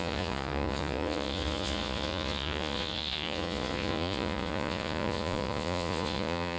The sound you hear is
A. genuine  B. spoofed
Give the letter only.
B